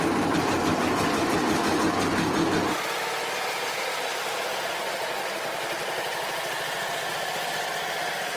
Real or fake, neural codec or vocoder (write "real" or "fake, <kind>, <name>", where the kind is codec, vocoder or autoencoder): real